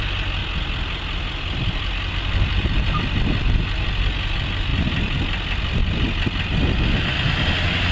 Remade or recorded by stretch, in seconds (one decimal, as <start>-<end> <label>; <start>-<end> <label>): 0.0-7.9 recorded